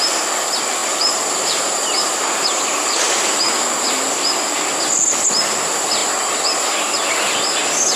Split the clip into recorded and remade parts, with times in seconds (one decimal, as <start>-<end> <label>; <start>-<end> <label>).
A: 0.0-0.8 recorded; 0.8-3.9 remade; 3.9-8.0 recorded